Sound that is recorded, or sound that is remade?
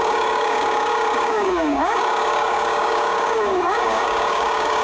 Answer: remade